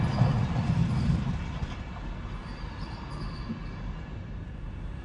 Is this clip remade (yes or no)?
no